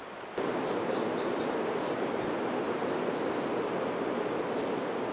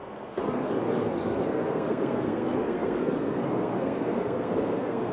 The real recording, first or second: first